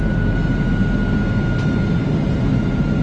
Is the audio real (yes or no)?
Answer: yes